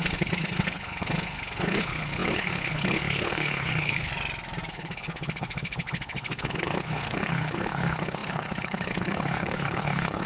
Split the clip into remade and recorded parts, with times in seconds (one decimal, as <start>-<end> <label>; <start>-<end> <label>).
0.0-4.1 remade; 4.1-4.7 recorded; 4.7-10.3 remade